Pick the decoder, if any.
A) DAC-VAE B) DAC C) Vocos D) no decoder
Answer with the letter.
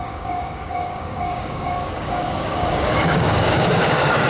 B